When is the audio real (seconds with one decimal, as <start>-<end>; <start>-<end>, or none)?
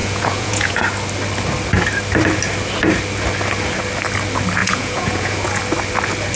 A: 0.8-4.6; 5.6-6.4